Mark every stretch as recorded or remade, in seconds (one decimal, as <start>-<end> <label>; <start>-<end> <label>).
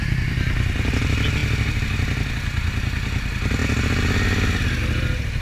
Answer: 0.0-5.4 recorded